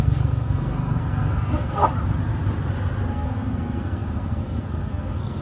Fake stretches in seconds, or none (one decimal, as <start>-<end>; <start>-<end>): 0.0-1.8; 3.1-5.4